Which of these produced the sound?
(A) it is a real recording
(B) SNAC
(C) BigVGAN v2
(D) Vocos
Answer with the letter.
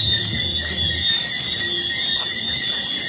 A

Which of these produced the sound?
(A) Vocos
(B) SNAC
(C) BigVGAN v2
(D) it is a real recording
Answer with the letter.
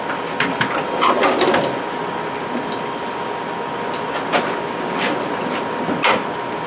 D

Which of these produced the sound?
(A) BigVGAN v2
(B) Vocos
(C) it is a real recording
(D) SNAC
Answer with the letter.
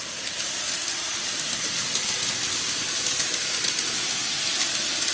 C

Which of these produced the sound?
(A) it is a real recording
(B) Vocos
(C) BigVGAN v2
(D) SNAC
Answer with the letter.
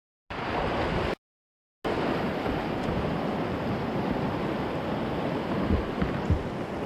A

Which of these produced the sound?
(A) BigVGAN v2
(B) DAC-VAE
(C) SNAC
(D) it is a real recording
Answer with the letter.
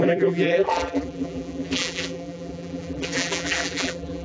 A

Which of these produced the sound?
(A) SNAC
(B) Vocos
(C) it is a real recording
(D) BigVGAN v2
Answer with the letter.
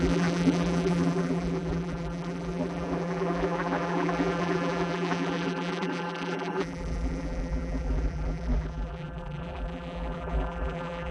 D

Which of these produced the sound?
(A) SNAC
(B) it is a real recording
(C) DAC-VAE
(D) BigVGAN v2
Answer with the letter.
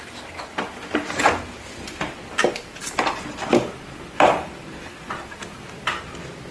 B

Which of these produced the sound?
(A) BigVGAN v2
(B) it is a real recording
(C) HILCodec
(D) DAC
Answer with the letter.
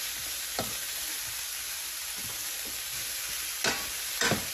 B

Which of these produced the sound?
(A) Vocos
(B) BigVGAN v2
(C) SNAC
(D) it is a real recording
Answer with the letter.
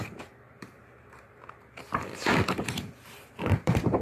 B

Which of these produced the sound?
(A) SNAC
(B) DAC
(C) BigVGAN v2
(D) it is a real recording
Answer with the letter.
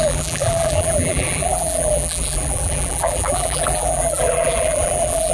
C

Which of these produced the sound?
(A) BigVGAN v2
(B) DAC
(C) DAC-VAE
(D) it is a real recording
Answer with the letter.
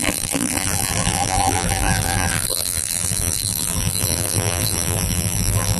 A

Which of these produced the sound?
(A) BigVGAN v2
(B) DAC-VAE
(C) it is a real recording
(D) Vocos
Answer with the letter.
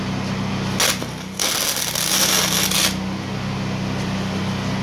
C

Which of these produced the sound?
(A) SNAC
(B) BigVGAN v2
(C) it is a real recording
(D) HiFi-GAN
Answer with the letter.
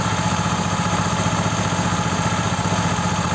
B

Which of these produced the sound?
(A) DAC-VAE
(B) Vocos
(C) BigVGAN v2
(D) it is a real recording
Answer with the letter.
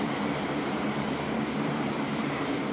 C